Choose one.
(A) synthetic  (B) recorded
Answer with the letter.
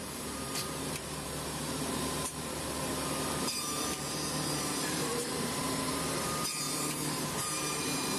A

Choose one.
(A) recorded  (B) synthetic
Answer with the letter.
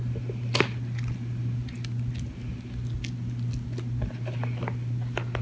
A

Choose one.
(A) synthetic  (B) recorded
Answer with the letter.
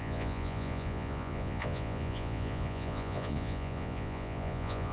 A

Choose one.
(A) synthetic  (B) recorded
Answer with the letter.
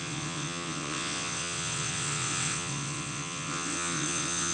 A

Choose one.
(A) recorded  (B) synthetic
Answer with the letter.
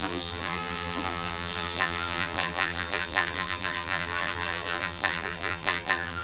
B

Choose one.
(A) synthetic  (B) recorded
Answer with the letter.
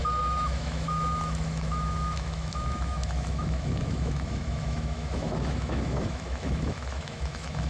A